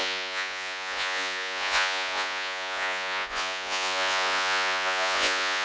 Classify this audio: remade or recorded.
remade